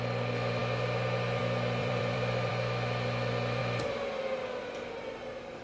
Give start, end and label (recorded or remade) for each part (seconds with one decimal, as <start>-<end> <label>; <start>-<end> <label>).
0.0-1.8 recorded; 1.8-2.5 remade; 2.5-5.6 recorded